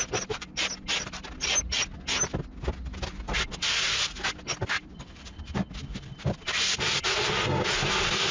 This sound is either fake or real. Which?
real